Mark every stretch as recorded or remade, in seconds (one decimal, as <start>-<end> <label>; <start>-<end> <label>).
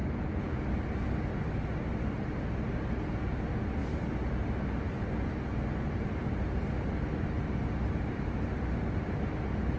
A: 0.0-0.6 remade; 0.6-9.8 recorded